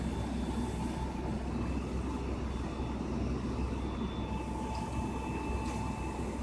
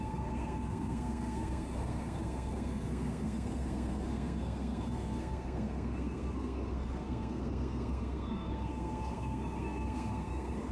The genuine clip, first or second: first